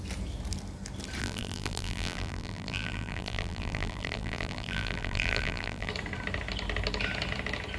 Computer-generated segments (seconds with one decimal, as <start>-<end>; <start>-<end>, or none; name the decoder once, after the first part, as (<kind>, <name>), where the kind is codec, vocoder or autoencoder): 1.2-5.9 (vocoder, BigVGAN v2)

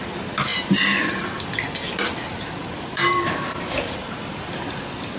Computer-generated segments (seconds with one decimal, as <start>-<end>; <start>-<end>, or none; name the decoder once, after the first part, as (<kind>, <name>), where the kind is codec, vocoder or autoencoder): 4.0-4.8 (vocoder, BigVGAN v2)